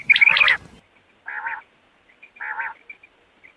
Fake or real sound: real